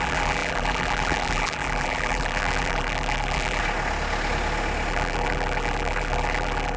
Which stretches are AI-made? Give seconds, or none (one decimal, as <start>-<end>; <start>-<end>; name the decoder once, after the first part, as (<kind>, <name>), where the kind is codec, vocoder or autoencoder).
0.0-3.6 (vocoder, BigVGAN v2); 4.9-6.8